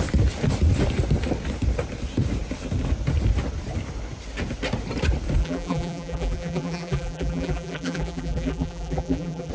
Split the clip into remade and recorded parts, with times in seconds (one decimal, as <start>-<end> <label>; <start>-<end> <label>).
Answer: 0.0-5.4 recorded; 5.4-9.5 remade